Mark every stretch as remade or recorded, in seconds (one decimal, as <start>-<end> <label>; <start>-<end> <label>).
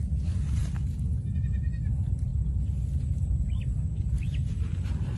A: 0.0-5.2 recorded